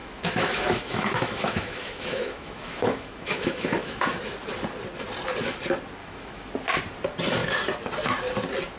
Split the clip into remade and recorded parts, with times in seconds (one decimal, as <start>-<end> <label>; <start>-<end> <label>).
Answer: 0.0-4.2 remade; 4.2-6.0 recorded; 6.0-6.5 remade; 6.5-8.8 recorded